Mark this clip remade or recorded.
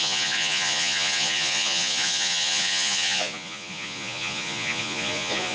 remade